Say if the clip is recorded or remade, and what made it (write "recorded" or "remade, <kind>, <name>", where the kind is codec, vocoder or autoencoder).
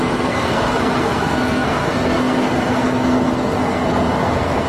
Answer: remade, codec, SNAC